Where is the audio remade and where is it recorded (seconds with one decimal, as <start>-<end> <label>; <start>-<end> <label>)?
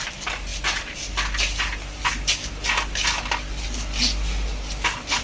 0.0-5.2 recorded